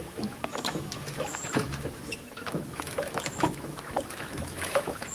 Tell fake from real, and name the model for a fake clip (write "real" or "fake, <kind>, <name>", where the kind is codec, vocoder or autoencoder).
fake, autoencoder, DAC-VAE